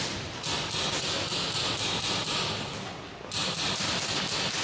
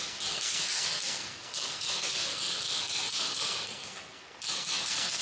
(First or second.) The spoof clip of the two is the second